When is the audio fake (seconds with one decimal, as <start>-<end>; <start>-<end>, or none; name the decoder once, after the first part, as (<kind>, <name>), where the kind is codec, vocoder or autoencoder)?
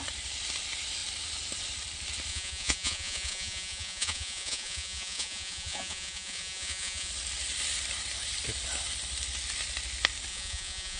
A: 2.3-7.1 (vocoder, Vocos); 10.3-11.0